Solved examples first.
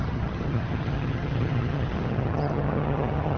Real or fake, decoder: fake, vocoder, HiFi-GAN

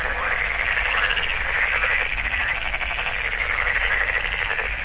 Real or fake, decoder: real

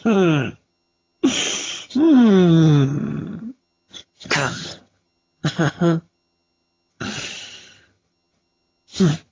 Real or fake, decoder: fake, vocoder, HiFi-GAN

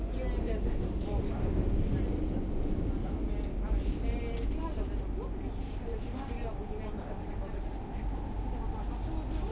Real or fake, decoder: real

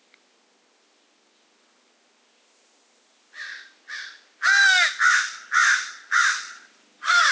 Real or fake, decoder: real